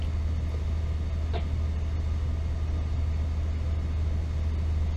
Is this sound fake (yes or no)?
no